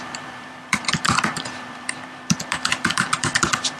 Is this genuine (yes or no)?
no